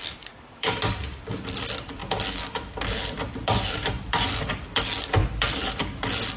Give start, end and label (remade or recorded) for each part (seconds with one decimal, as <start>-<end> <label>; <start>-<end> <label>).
0.0-2.0 remade; 2.0-2.7 recorded; 2.7-6.4 remade